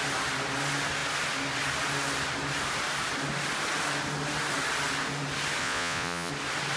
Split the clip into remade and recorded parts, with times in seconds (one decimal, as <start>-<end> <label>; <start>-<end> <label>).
0.0-5.6 recorded; 5.6-6.3 remade; 6.3-6.8 recorded